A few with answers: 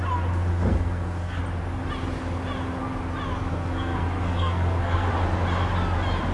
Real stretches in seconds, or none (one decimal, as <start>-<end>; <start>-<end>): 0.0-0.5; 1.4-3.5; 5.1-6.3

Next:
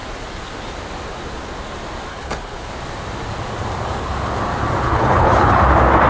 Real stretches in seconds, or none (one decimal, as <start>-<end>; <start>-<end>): 0.0-2.1; 2.7-4.8; 5.6-6.1

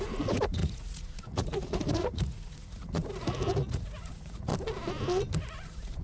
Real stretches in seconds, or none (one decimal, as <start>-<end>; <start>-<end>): 4.5-5.4

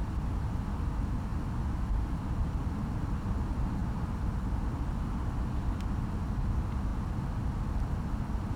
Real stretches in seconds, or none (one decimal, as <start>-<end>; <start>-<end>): 0.9-8.6

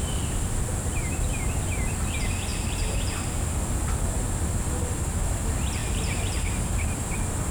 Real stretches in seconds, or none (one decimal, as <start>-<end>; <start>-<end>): 0.0-2.5; 3.6-5.8; 7.1-7.5

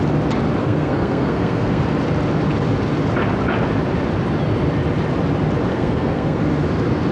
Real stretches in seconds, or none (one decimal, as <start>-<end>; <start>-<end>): 0.0-0.6; 1.8-5.7; 6.4-7.1

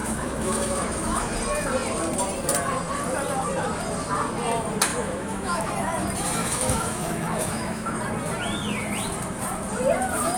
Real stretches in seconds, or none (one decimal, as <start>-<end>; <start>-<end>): 1.3-4.9; 5.7-6.4; 8.0-10.4

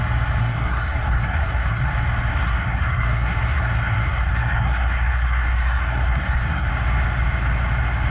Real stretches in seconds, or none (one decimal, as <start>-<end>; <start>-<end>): 0.0-0.4; 1.9-2.3; 6.7-8.1